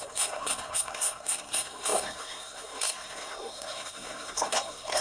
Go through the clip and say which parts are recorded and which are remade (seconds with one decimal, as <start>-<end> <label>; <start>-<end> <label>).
0.0-5.0 remade